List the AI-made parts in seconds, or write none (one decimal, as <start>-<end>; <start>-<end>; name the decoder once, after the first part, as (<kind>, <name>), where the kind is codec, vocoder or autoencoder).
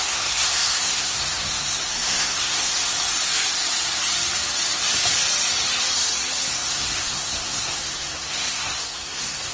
0.0-2.8 (codec, SNAC); 6.5-9.5